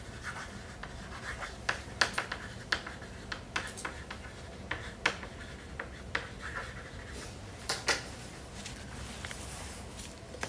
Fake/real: real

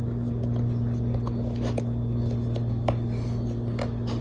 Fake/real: real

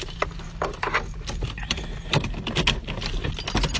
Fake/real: real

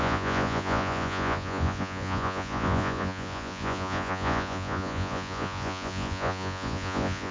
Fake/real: fake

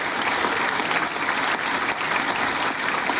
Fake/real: real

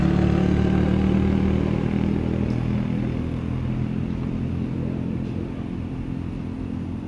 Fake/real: real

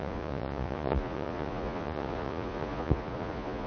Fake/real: fake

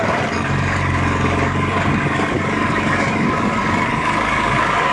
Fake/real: fake